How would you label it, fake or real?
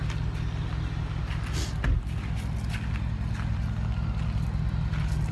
real